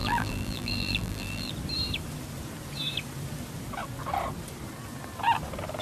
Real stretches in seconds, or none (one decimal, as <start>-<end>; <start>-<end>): 1.5-5.8